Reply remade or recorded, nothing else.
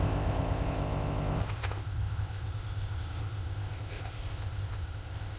remade